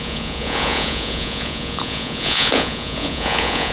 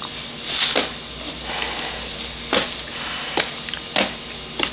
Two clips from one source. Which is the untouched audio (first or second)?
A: second